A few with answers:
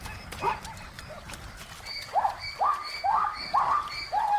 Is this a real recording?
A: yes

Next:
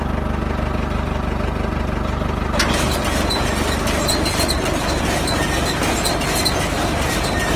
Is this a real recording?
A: yes